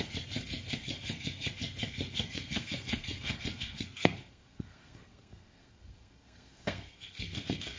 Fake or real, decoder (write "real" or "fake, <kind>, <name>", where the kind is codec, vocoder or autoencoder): fake, codec, SNAC